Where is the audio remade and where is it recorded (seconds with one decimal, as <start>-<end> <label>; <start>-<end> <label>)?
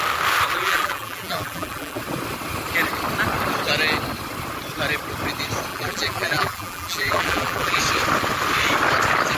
0.0-0.6 recorded; 0.6-2.0 remade; 2.0-5.7 recorded; 5.7-7.8 remade; 7.8-9.4 recorded